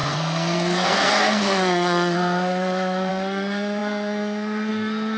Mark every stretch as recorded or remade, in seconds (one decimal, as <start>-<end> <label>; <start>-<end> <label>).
0.0-5.2 remade